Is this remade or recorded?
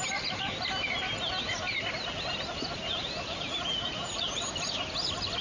recorded